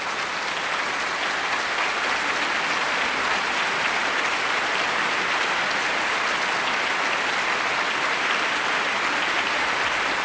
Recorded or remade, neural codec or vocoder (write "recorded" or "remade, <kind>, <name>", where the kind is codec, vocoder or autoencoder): recorded